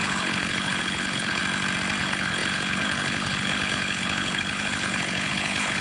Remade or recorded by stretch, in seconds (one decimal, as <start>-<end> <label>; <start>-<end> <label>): 0.0-1.4 remade; 1.4-2.0 recorded; 2.0-5.8 remade